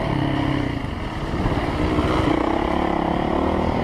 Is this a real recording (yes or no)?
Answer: yes